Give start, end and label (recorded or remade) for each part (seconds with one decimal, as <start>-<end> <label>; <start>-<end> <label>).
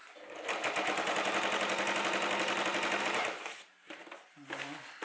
0.0-3.0 recorded; 3.0-4.0 remade; 4.0-5.0 recorded